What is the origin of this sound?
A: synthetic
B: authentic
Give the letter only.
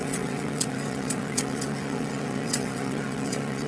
A